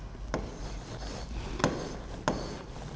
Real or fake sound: real